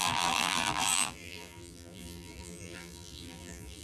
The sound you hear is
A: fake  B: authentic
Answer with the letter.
A